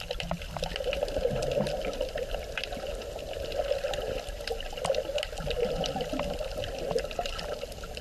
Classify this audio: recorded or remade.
recorded